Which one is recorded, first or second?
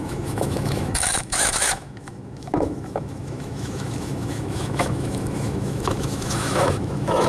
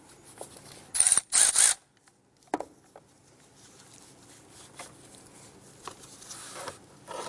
second